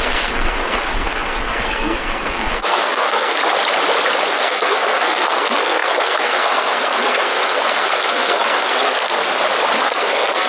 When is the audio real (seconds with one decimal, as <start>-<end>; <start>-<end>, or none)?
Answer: 3.4-4.3; 9.2-9.8